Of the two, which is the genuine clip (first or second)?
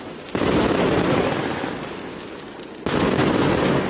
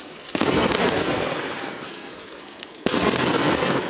first